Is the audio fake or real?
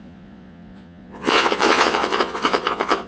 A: fake